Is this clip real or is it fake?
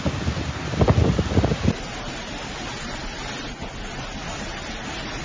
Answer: real